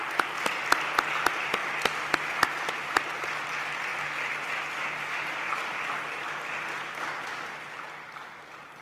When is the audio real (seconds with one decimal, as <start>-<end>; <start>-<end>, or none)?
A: 0.0-8.8